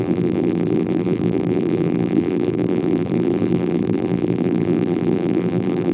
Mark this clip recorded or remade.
remade